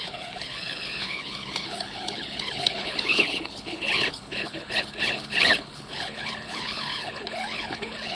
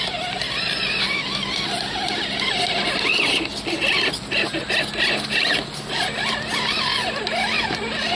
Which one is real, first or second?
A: second